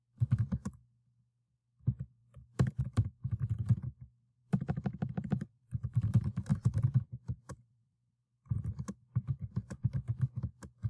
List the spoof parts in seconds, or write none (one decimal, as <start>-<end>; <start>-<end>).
4.4-6.1; 6.5-8.6